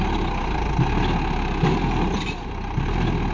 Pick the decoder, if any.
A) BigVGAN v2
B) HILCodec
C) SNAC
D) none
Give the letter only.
D